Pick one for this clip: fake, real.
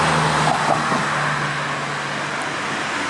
real